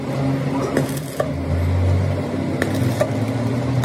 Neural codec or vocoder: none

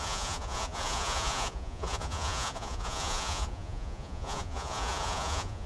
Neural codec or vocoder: vocoder, Vocos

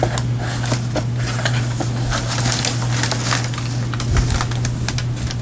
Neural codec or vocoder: none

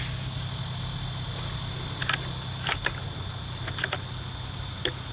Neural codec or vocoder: none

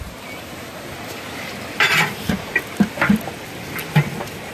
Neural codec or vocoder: none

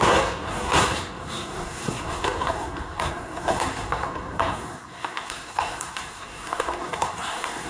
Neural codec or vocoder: codec, SNAC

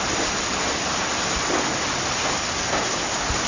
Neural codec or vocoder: none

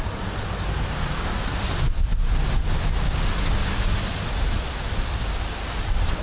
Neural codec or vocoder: none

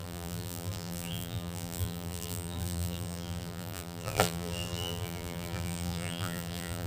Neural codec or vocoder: vocoder, BigVGAN v2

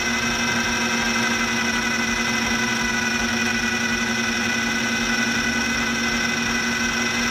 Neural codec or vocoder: none